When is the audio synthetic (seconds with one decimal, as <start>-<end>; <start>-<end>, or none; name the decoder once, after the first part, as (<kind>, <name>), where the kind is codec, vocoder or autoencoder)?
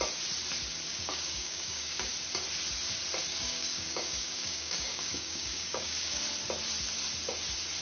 0.9-2.1 (codec, DAC); 3.3-6.2